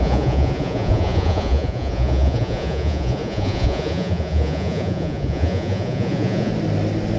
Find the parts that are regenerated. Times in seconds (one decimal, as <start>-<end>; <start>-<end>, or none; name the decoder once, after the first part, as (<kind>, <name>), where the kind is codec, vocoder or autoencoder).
0.0-6.5 (vocoder, Vocos)